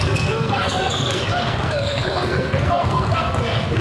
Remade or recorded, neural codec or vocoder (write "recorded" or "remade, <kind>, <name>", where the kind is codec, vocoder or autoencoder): remade, codec, SNAC